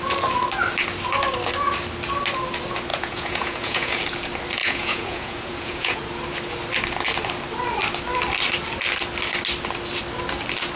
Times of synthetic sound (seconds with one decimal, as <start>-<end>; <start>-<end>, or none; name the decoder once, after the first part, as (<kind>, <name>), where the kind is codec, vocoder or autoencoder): 2.9-4.0 (vocoder, Vocos); 4.6-6.0